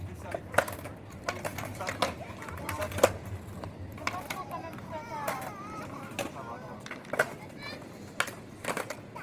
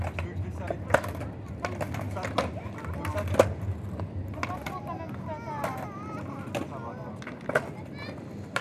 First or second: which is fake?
first